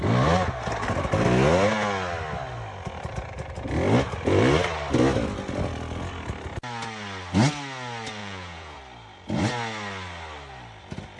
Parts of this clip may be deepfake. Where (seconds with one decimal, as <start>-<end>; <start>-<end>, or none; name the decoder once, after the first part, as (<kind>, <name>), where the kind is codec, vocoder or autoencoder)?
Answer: 8.2-8.8 (vocoder, Vocos)